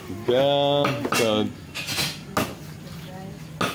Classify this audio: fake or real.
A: real